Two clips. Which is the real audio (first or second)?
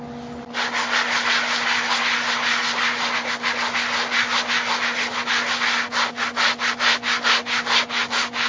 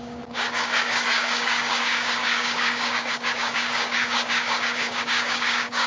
first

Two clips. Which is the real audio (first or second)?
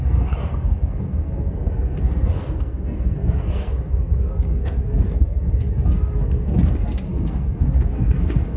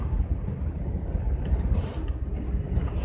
second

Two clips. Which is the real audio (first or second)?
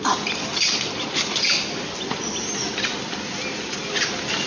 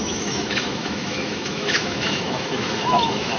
first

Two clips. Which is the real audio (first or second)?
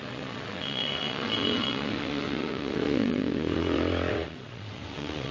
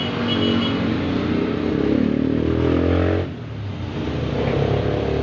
second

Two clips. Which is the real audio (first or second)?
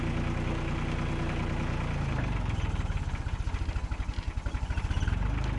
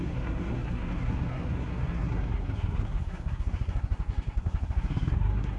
first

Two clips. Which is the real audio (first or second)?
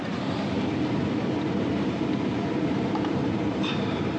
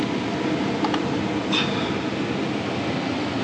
second